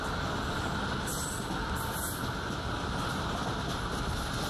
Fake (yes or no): no